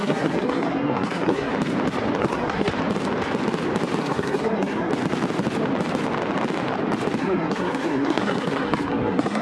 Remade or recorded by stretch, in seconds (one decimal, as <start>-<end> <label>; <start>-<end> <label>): 0.0-1.5 remade; 1.5-2.2 recorded; 2.2-2.7 remade; 2.7-4.0 recorded; 4.0-4.9 remade; 4.9-7.2 recorded; 7.2-9.4 remade